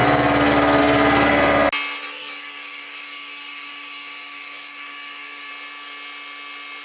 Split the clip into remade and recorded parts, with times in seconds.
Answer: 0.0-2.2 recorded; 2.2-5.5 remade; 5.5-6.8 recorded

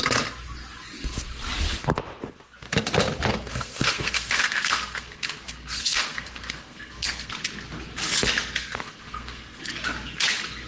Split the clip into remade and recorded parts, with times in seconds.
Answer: 0.0-3.3 recorded; 3.3-7.3 remade; 7.3-8.6 recorded; 8.6-9.6 remade; 9.6-10.7 recorded

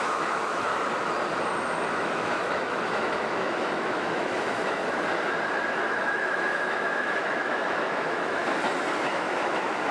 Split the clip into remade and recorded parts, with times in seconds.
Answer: 0.0-0.7 remade; 0.7-1.9 recorded; 1.9-4.8 remade; 4.8-5.7 recorded; 5.7-8.4 remade; 8.4-9.1 recorded; 9.1-9.9 remade

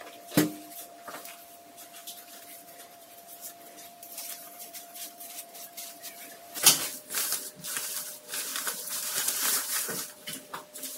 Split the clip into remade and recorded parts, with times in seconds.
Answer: 0.0-2.0 recorded; 2.0-3.1 remade; 3.1-3.9 recorded; 3.9-6.4 remade; 6.4-8.5 recorded; 8.5-10.5 remade; 10.5-11.0 recorded